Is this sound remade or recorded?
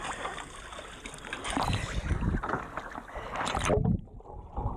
recorded